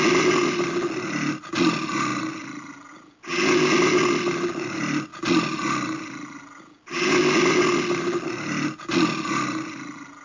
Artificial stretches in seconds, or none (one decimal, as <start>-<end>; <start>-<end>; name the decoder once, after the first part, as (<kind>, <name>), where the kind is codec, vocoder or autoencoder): none